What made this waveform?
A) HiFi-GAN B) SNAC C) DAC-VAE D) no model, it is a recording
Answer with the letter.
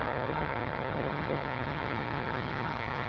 A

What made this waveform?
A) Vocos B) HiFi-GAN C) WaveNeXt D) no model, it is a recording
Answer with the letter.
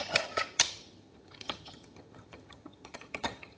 B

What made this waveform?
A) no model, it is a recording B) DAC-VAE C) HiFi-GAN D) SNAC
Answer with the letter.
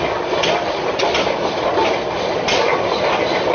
A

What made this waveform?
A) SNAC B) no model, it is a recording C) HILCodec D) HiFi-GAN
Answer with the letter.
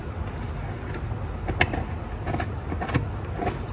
B